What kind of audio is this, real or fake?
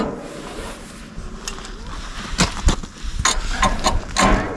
real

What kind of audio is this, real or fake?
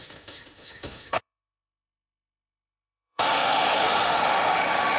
fake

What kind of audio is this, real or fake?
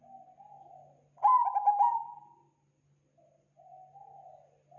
real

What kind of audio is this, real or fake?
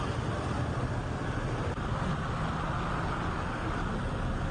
real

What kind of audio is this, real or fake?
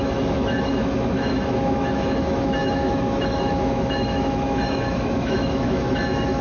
fake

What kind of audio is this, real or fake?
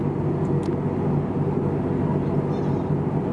real